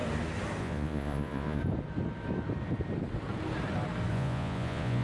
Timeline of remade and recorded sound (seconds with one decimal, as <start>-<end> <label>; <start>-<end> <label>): 0.0-0.6 recorded; 0.6-1.6 remade; 1.6-4.1 recorded; 4.1-5.0 remade